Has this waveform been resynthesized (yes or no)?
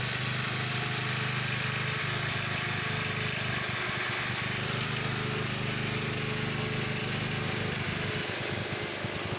no